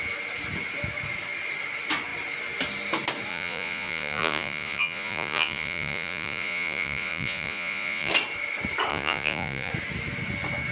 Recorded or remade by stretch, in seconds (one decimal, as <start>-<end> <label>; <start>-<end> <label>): 0.0-3.3 recorded; 3.3-8.1 remade; 8.1-8.9 recorded; 8.9-9.7 remade; 9.7-10.7 recorded